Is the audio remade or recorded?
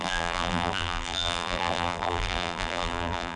remade